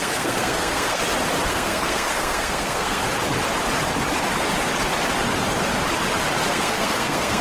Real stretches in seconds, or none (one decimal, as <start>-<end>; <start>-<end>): 1.0-1.5; 3.0-6.5